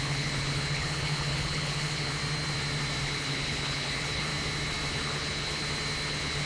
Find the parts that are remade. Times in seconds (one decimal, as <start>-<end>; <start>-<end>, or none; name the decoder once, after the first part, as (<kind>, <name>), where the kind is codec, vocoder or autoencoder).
0.0-2.2 (codec, HILCodec); 3.0-4.3; 4.9-5.6; 6.1-6.5